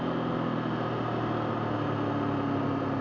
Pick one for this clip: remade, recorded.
recorded